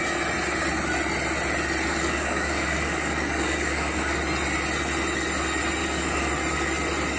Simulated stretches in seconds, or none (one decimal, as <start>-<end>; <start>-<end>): 1.9-4.2; 5.8-6.3